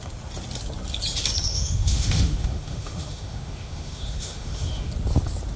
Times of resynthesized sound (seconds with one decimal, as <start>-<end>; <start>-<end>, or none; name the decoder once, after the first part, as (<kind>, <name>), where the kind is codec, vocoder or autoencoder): 1.5-4.9 (autoencoder, DAC-VAE)